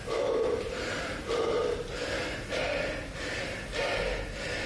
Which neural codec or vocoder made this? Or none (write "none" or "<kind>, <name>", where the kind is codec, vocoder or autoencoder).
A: none